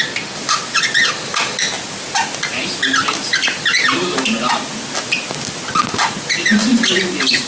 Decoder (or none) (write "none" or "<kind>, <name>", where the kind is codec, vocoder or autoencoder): none